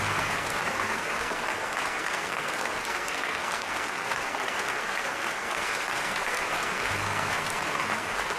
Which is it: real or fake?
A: fake